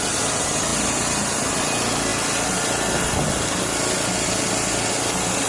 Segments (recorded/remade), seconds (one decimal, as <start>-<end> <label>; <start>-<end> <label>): 0.0-5.5 recorded